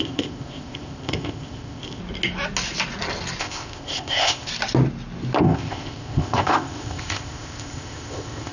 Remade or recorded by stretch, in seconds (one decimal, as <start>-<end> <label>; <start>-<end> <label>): 0.0-2.0 remade; 2.0-3.4 recorded; 3.4-4.5 remade; 4.5-5.4 recorded; 5.4-8.5 remade